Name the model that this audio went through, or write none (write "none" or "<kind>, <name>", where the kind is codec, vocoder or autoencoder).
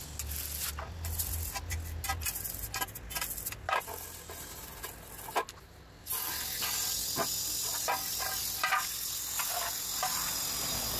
none